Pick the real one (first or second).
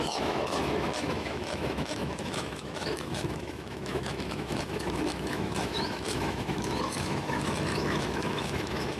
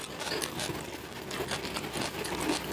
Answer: second